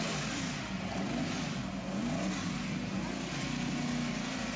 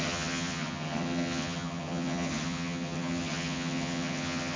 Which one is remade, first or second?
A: second